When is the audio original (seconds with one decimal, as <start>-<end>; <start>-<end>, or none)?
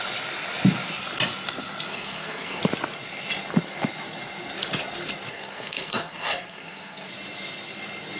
0.0-1.9; 2.6-5.3; 7.1-8.2